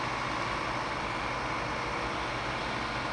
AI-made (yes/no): no